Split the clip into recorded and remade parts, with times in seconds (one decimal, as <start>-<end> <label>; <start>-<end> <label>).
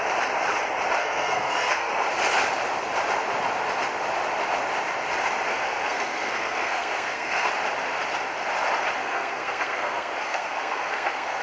0.0-1.0 recorded; 1.0-1.9 remade; 1.9-5.5 recorded; 5.5-7.5 remade; 7.5-9.0 recorded; 9.0-11.4 remade